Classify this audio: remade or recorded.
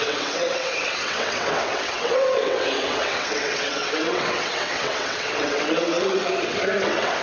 remade